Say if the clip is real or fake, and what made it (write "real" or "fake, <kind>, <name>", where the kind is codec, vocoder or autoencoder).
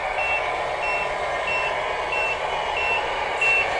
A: real